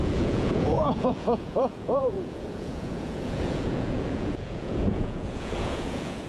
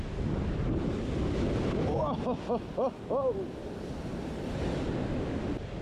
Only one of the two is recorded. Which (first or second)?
second